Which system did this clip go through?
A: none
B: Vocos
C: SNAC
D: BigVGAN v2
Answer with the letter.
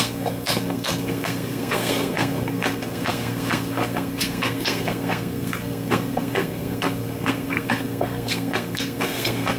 C